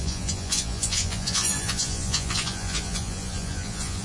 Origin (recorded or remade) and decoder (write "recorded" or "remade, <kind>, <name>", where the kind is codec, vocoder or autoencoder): remade, vocoder, Vocos